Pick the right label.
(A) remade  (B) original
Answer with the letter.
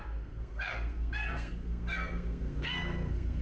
A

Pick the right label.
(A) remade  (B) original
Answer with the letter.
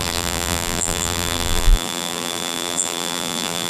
A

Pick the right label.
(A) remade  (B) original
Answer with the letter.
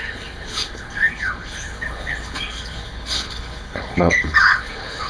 A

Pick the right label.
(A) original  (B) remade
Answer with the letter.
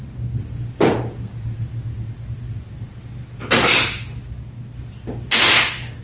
A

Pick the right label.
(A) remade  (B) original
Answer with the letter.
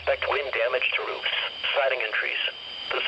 A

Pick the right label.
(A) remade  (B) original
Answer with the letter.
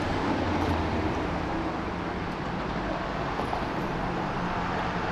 A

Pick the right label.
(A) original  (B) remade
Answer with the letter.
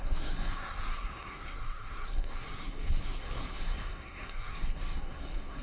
B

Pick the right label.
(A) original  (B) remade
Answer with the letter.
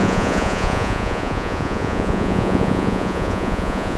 B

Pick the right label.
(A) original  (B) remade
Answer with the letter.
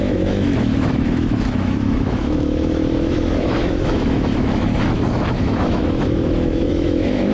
B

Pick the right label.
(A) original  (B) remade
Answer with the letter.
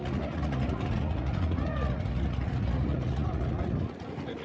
B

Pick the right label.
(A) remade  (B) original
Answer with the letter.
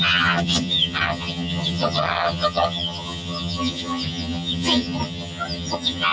A